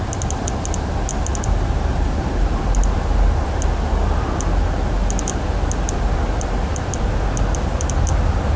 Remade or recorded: recorded